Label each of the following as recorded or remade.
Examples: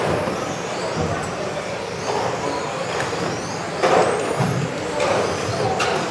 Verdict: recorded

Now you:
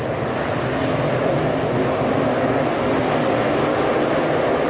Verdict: recorded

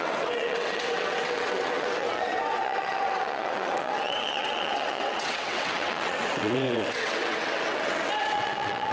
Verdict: remade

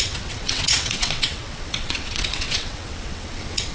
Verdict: remade